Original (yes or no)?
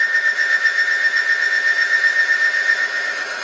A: no